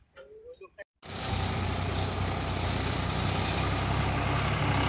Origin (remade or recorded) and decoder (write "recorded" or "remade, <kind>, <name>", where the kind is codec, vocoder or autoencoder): recorded